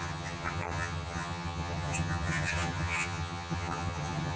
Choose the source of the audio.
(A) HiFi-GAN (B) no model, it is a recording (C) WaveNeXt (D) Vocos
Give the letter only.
A